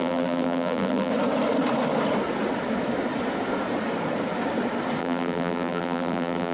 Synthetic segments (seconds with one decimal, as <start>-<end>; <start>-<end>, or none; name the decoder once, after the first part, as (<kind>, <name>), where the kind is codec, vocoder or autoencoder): 0.0-1.1 (vocoder, BigVGAN v2); 5.0-6.5